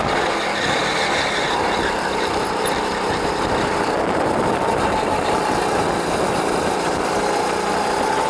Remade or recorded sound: recorded